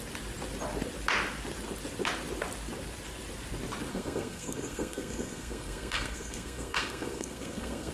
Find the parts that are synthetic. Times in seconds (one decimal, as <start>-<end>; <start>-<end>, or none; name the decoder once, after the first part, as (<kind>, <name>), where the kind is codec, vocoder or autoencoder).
3.9-7.9 (codec, SNAC)